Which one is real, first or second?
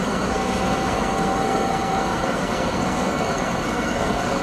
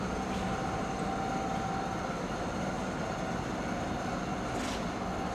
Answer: second